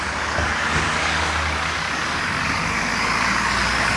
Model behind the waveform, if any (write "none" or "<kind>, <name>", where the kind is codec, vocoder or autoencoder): codec, DAC